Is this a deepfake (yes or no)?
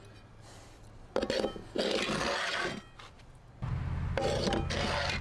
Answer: no